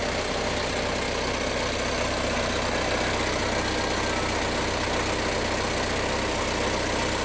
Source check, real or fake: real